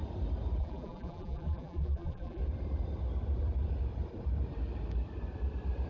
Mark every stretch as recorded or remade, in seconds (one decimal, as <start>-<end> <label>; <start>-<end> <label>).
0.0-0.6 recorded; 0.6-2.4 remade; 2.4-5.9 recorded

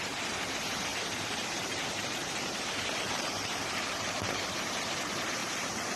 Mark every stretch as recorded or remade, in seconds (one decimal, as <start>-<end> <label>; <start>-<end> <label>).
0.0-0.9 recorded; 0.9-4.5 remade; 4.5-5.4 recorded; 5.4-6.0 remade

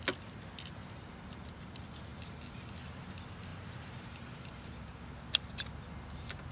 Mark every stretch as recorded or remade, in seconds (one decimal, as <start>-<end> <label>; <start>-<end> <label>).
0.0-0.8 recorded; 0.8-1.6 remade; 1.6-3.5 recorded; 3.5-5.0 remade; 5.0-6.5 recorded

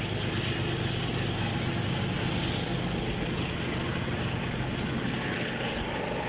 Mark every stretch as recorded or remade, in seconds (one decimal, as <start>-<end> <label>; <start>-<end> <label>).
0.0-6.3 recorded

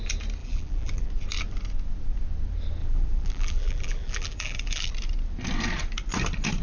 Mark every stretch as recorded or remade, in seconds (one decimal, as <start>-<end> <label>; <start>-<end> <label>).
0.0-0.4 recorded; 0.4-1.1 remade; 1.1-2.8 recorded; 2.8-4.9 remade; 4.9-6.6 recorded

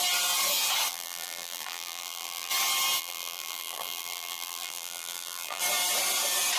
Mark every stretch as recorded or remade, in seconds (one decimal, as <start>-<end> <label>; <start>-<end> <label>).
0.0-0.9 recorded; 0.9-2.5 remade; 2.5-3.0 recorded; 3.0-5.6 remade; 5.6-6.6 recorded

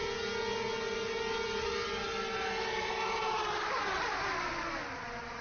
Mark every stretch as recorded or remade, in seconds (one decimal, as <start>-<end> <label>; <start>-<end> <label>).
0.0-5.4 recorded

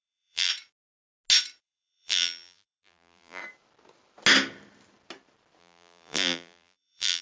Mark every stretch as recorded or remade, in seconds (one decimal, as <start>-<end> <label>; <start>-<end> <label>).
0.0-0.5 remade; 0.5-1.6 recorded; 1.6-3.4 remade; 3.4-5.6 recorded; 5.6-7.2 remade